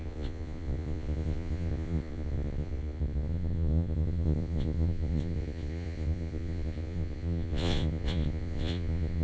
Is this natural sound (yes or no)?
no